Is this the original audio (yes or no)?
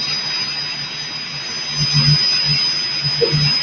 yes